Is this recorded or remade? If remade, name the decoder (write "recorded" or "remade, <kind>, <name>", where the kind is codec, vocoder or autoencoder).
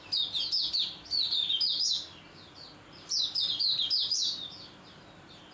recorded